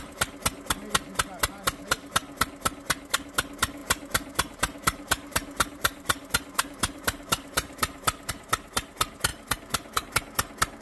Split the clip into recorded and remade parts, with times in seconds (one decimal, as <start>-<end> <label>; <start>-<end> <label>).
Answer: 0.0-3.8 recorded; 3.8-8.3 remade; 8.3-9.3 recorded; 9.3-10.1 remade; 10.1-10.8 recorded